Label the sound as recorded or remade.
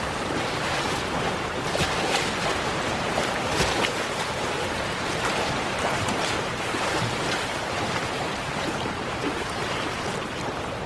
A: remade